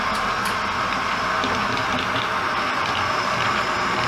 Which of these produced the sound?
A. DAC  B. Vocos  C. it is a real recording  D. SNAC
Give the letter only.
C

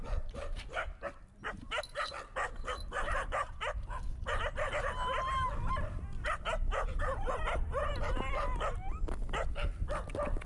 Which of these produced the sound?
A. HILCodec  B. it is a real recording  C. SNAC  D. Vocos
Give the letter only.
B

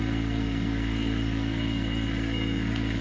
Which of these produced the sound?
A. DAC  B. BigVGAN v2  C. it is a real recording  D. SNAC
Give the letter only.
D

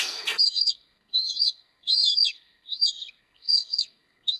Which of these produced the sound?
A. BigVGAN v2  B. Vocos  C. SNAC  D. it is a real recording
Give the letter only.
C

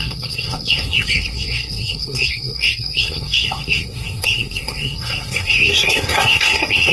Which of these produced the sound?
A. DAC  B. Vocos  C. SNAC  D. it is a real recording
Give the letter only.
C